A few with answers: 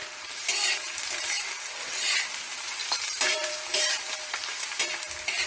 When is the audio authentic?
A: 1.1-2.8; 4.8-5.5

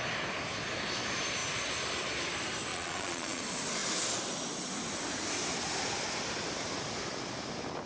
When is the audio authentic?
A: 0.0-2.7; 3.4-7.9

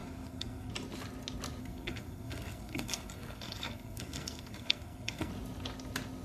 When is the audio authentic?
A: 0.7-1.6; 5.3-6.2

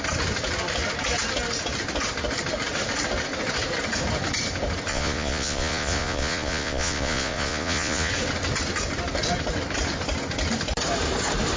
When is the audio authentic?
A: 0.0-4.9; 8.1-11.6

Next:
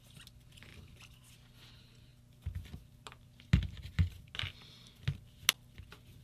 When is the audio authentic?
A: 0.0-6.2

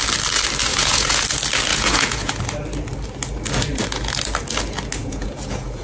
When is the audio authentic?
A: 0.0-0.7; 1.2-1.7; 2.4-5.0

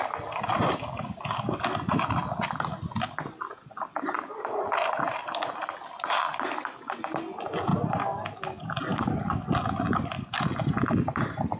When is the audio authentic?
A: 0.0-11.6